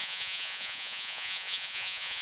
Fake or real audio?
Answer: fake